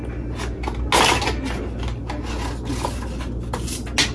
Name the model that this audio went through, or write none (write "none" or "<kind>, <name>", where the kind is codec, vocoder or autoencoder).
none